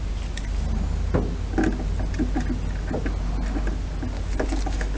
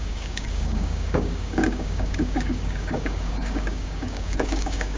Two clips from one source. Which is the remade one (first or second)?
second